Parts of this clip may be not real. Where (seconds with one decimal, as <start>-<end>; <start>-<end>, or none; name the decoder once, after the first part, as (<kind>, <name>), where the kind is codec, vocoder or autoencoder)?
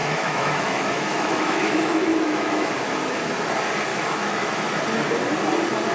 0.0-2.7 (autoencoder, DAC-VAE); 3.9-4.5